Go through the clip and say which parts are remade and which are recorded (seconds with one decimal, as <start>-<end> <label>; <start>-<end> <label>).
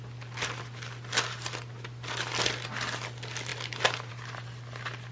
0.0-5.1 recorded